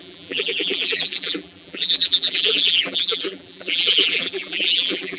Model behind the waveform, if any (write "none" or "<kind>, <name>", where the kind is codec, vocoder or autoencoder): vocoder, BigVGAN v2